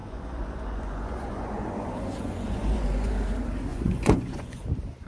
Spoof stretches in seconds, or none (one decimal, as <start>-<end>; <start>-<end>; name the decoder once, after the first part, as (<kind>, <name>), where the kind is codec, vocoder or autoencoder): 0.0-3.1 (vocoder, Vocos); 3.7-4.6